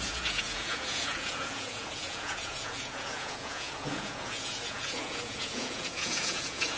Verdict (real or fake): fake